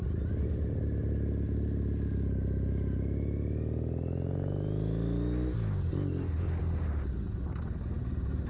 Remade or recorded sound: recorded